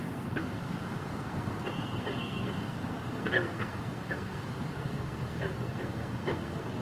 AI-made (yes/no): yes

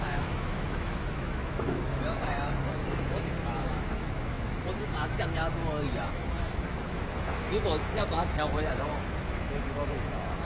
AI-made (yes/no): yes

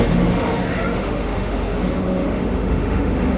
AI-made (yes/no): yes